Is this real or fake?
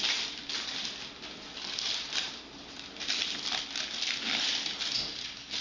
real